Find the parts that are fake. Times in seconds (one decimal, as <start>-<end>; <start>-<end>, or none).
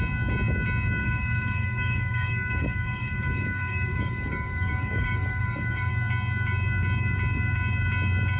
1.0-5.9